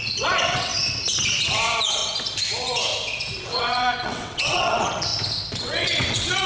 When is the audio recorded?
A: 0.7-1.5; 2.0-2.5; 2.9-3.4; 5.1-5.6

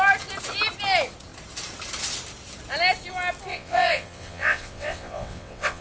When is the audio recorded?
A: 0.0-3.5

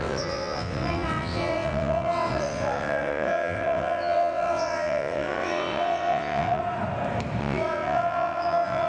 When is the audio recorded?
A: 6.6-7.4